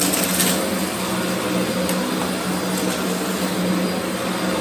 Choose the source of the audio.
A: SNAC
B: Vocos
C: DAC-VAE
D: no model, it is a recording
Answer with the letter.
D